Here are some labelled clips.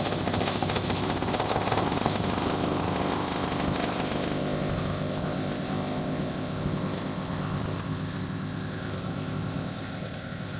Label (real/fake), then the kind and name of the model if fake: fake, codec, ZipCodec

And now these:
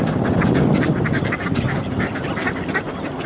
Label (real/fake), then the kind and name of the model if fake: real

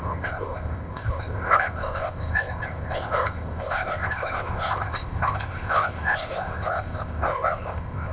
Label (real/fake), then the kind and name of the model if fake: fake, codec, ZipCodec